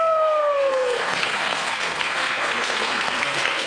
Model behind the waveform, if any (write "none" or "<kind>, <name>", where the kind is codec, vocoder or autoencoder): codec, SNAC